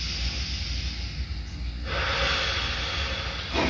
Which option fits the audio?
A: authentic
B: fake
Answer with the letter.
A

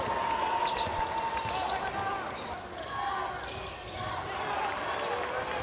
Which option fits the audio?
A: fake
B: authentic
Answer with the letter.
B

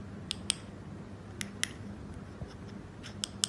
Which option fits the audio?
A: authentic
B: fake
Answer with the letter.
A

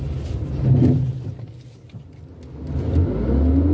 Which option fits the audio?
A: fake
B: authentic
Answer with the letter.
B